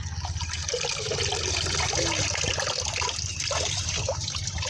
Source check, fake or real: real